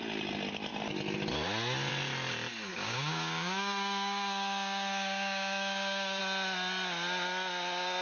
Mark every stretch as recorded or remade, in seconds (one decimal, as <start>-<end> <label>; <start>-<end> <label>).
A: 0.0-2.7 recorded; 2.7-6.2 remade; 6.2-8.0 recorded